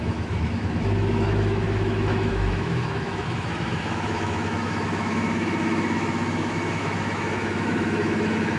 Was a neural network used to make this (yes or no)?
yes